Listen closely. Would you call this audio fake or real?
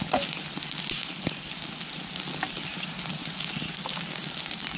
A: real